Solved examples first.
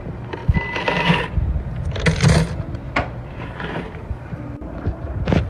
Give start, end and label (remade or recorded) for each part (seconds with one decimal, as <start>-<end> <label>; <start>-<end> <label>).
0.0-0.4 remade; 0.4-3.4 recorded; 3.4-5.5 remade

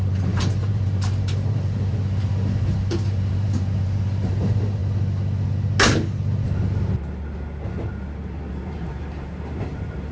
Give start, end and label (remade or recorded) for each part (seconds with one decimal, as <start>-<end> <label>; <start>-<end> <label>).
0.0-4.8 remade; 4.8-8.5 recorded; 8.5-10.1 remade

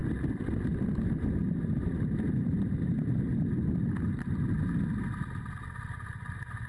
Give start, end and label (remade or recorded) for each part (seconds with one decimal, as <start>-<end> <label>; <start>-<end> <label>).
0.0-2.6 recorded; 2.6-3.3 remade; 3.3-5.6 recorded; 5.6-6.7 remade

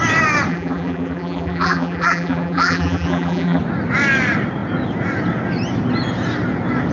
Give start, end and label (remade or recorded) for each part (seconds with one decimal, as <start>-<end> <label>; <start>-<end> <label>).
0.0-0.5 recorded; 0.5-3.6 remade; 3.6-6.9 recorded

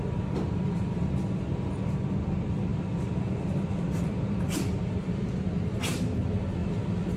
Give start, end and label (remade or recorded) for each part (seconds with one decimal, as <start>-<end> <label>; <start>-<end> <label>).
0.0-2.7 recorded; 2.7-5.4 remade; 5.4-6.6 recorded; 6.6-7.2 remade